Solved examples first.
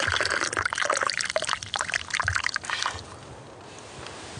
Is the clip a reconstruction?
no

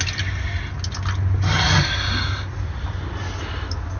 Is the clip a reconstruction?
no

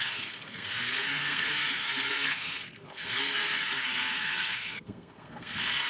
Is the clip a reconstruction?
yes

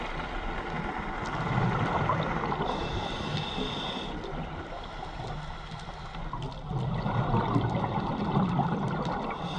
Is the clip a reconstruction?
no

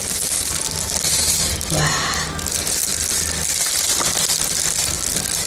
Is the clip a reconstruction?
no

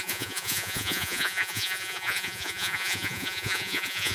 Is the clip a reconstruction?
yes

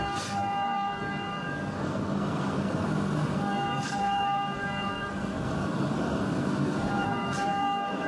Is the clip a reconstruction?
yes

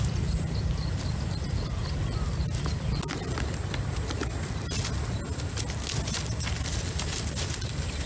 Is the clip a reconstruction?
no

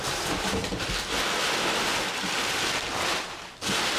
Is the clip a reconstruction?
no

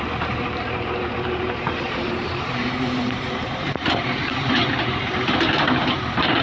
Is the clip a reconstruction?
yes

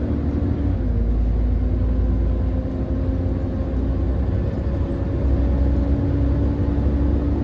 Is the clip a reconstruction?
no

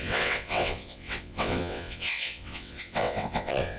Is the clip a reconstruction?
yes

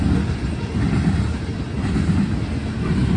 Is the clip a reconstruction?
no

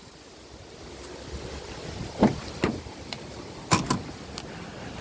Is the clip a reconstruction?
no